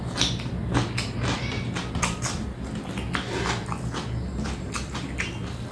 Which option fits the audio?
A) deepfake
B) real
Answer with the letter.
B